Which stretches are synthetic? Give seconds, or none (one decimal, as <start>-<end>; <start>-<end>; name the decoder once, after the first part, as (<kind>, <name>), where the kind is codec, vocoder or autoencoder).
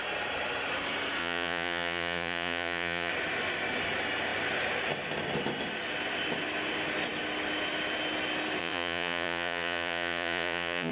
1.2-3.1 (vocoder, Vocos); 8.6-10.9